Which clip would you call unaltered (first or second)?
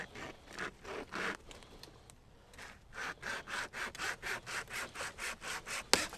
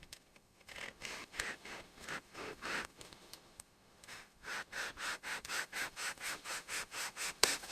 first